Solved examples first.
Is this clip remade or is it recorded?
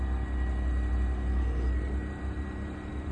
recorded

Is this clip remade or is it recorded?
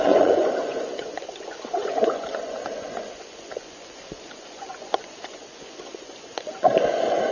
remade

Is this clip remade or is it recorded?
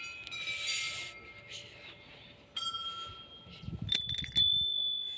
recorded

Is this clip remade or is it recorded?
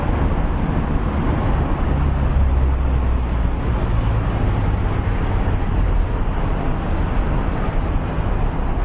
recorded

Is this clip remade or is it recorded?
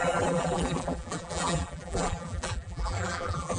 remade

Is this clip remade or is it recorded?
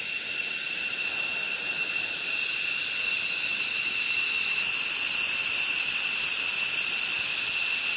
recorded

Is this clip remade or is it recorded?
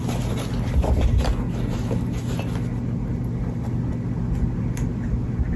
recorded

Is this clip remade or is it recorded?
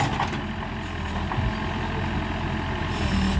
recorded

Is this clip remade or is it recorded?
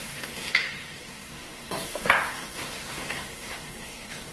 remade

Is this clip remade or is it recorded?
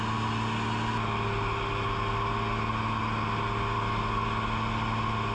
recorded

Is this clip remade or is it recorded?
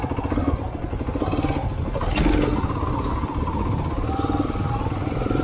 recorded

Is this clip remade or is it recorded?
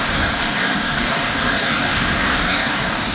remade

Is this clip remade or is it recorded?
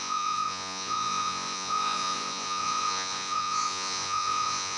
remade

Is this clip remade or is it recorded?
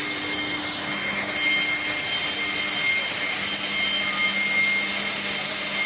recorded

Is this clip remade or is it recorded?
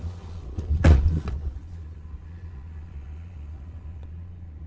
remade